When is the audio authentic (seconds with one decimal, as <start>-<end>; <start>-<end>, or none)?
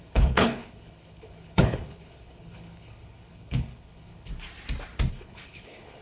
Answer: 4.3-5.1